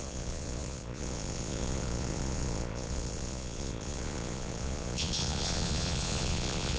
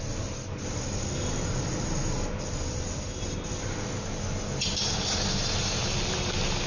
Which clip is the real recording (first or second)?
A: second